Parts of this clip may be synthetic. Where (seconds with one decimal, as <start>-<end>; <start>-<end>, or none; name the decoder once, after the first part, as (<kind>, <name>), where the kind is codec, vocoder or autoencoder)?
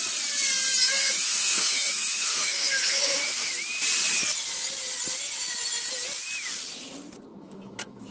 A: 1.0-3.5 (autoencoder, DAC-VAE); 7.3-8.1